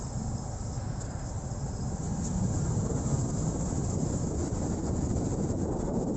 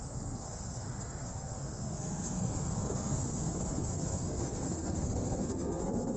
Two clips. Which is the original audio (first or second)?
first